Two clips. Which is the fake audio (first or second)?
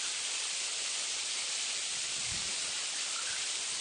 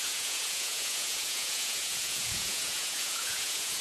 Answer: second